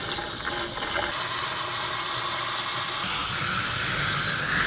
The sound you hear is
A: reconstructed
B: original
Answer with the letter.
B